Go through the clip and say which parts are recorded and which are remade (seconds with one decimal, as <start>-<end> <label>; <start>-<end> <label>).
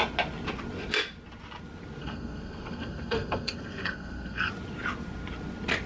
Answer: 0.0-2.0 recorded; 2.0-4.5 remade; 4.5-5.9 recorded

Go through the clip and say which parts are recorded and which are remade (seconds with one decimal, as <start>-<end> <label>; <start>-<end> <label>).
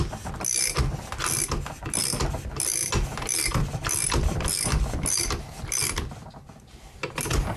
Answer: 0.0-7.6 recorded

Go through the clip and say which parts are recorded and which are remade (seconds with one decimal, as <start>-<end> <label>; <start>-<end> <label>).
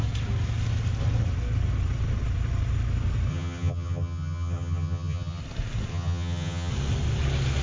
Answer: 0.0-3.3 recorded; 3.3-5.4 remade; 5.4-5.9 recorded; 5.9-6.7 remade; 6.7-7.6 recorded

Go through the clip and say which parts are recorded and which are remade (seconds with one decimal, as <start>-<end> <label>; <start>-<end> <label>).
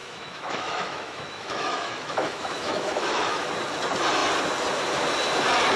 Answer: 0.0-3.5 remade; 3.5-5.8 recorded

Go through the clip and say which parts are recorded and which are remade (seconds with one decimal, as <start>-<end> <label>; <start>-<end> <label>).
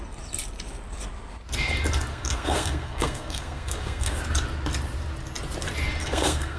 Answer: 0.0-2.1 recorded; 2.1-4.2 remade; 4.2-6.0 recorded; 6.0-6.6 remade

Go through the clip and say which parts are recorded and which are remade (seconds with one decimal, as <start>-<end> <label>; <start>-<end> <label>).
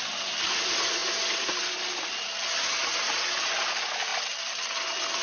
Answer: 0.0-5.2 recorded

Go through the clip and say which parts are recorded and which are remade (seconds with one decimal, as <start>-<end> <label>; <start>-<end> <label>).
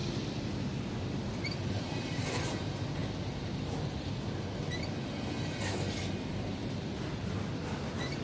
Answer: 0.0-8.2 recorded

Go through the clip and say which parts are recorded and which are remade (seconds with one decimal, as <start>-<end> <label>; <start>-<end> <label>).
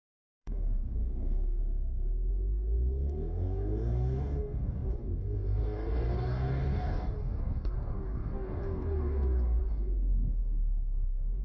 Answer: 0.0-1.6 remade; 1.6-2.3 recorded; 2.3-11.4 remade